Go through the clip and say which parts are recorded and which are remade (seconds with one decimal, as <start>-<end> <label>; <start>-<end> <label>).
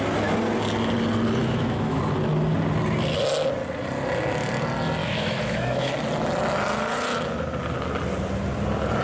0.0-1.4 recorded; 1.4-2.0 remade; 2.0-5.0 recorded; 5.0-5.9 remade; 5.9-9.0 recorded